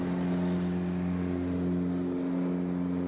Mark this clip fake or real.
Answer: real